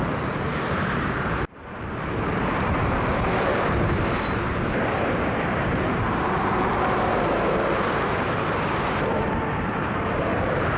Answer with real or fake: fake